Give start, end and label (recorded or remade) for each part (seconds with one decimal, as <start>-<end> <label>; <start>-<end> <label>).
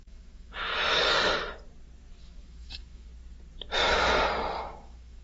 0.0-0.7 remade; 0.7-2.2 recorded; 2.2-3.1 remade; 3.1-4.6 recorded; 4.6-5.2 remade